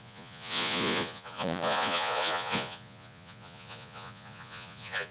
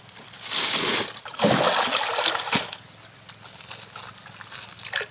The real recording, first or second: second